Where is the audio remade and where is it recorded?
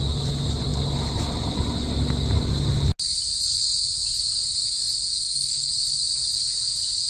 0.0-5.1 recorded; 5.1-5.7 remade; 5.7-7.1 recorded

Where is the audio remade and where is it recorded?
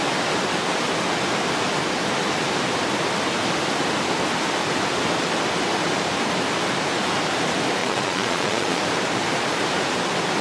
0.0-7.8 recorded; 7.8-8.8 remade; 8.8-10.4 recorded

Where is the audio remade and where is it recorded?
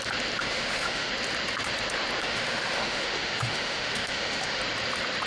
0.0-0.4 recorded; 0.4-1.1 remade; 1.1-2.2 recorded; 2.2-4.6 remade; 4.6-5.3 recorded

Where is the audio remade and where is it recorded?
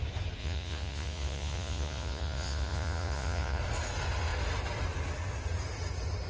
0.0-0.4 recorded; 0.4-3.6 remade; 3.6-6.3 recorded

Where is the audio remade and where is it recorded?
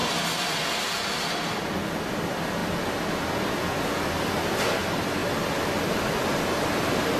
0.0-1.3 remade; 1.3-5.2 recorded; 5.2-6.0 remade; 6.0-7.2 recorded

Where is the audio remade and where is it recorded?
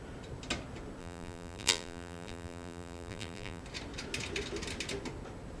0.0-1.0 recorded; 1.0-3.6 remade; 3.6-5.6 recorded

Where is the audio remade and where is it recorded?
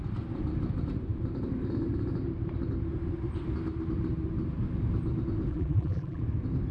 0.0-5.5 recorded; 5.5-6.2 remade; 6.2-6.7 recorded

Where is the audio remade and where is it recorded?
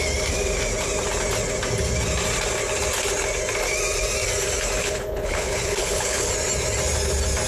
0.0-4.8 recorded; 4.8-6.3 remade; 6.3-7.5 recorded